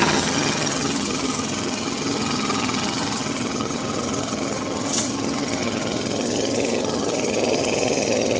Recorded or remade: remade